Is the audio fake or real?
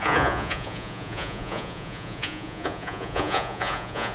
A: fake